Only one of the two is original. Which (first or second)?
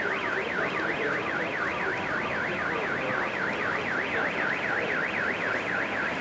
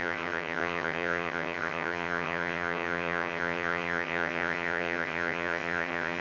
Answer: first